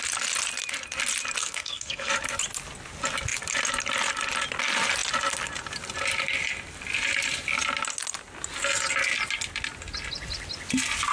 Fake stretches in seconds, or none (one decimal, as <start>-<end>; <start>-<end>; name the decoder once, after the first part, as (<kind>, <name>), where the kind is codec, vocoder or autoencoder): 1.4-2.1 (codec, SNAC)